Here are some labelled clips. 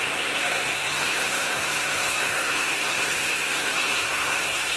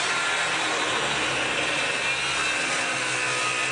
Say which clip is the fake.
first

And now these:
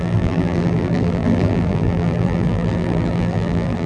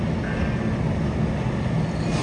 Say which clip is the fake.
first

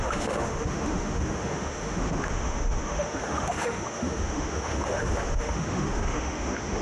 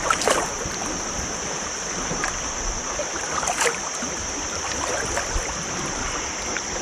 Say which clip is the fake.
first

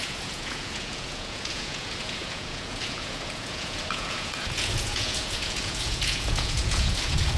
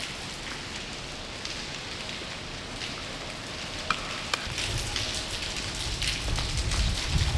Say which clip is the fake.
first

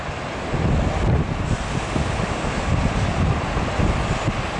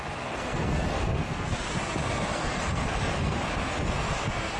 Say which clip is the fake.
second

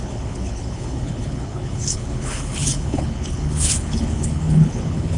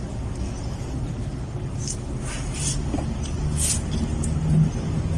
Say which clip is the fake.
first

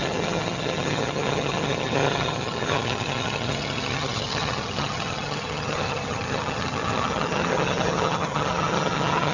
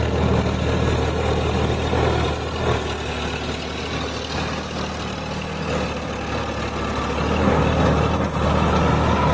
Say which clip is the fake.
first